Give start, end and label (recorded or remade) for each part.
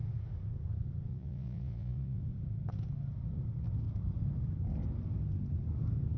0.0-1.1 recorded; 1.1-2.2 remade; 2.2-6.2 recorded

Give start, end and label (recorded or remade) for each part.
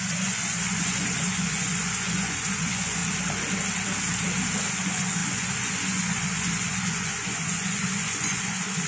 0.0-3.0 remade; 3.0-4.7 recorded; 4.7-8.9 remade